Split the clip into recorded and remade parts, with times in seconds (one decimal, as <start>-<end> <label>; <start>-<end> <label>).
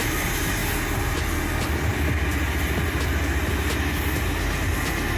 0.0-5.2 recorded